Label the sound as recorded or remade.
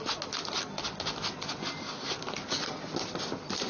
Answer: recorded